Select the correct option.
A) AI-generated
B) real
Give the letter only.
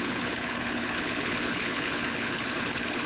A